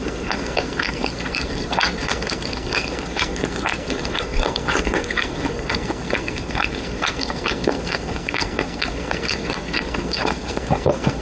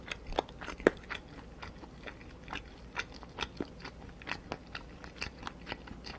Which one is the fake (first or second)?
first